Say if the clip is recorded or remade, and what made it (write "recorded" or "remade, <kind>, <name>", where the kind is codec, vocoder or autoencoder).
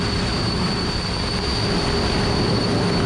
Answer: recorded